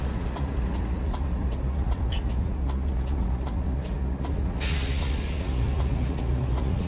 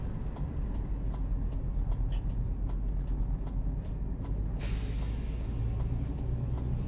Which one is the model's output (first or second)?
first